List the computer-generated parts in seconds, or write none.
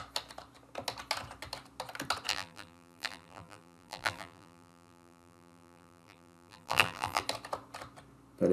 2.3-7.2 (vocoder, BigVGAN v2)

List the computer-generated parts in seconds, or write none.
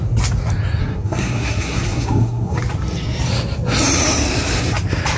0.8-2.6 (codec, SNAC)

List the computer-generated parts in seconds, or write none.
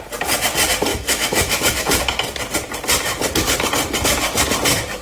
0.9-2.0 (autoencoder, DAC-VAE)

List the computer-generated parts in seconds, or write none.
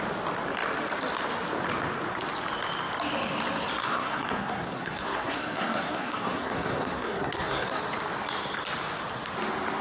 3.8-7.8 (codec, SNAC)